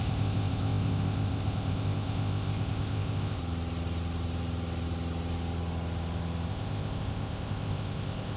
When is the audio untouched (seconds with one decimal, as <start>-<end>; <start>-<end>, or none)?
3.4-6.5